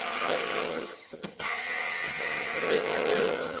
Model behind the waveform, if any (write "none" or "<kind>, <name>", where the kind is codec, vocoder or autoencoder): vocoder, HiFi-GAN